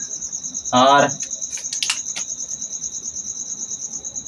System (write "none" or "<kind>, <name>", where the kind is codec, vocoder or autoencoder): none